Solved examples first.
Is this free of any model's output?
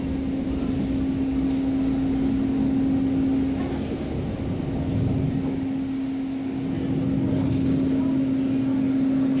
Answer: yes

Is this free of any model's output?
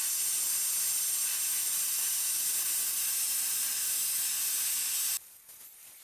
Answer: yes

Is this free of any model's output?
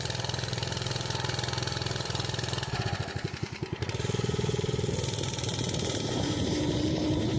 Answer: no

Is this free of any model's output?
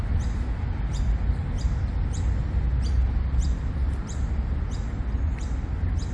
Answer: yes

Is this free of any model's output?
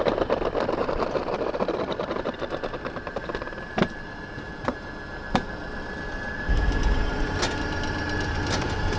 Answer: no